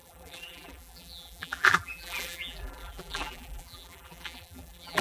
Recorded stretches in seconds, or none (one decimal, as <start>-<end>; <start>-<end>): none